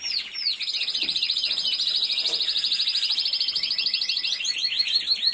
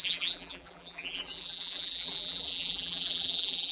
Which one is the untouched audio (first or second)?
first